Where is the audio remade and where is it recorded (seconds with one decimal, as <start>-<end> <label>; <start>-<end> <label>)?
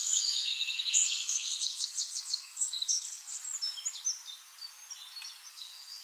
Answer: 0.0-3.4 remade; 3.4-5.5 recorded; 5.5-6.0 remade